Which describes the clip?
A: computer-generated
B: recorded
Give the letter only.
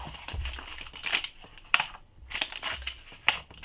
A